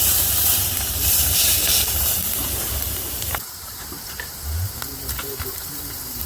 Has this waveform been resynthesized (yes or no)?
yes